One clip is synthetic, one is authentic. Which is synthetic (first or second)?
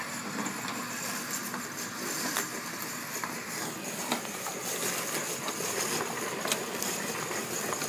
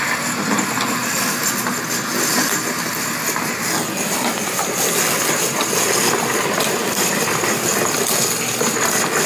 first